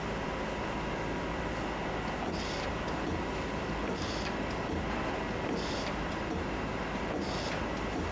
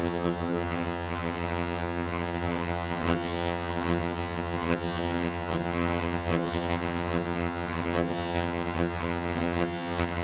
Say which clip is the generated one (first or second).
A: second